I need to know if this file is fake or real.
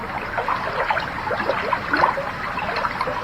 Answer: real